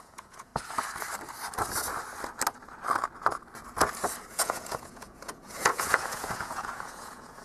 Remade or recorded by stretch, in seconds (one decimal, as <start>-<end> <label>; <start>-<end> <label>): 0.0-0.5 remade; 0.5-4.3 recorded; 4.3-7.4 remade